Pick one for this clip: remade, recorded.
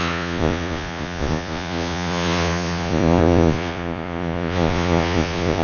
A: remade